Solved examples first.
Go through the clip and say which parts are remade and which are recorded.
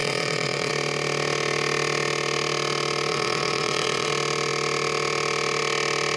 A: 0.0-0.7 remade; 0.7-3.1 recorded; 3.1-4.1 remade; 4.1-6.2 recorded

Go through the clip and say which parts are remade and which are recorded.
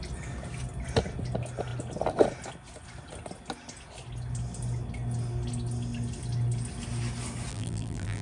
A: 0.0-7.5 recorded; 7.5-8.2 remade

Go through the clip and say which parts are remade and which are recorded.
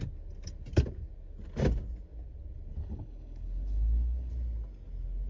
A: 0.0-2.8 recorded; 2.8-4.3 remade; 4.3-5.3 recorded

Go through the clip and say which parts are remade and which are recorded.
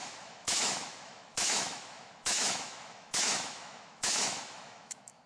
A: 0.0-5.3 remade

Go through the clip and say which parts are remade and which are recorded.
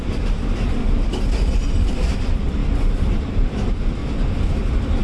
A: 0.0-0.8 remade; 0.8-1.9 recorded; 1.9-2.6 remade; 2.6-3.1 recorded; 3.1-4.0 remade; 4.0-5.0 recorded